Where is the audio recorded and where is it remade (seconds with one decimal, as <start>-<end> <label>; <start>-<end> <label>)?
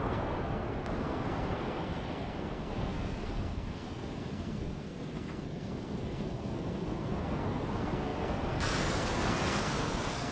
0.0-10.3 remade